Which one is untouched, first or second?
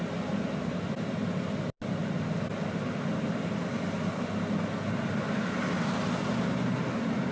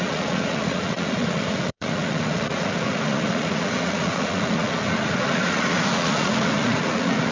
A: first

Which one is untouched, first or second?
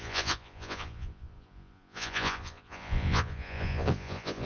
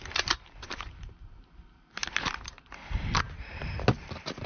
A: second